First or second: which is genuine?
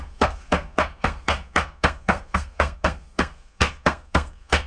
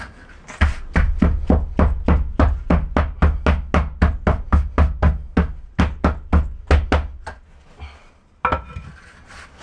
second